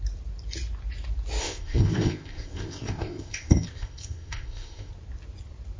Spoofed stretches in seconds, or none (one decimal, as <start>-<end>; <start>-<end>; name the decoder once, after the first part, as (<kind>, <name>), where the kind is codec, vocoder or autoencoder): 1.4-4.9 (codec, ZipCodec)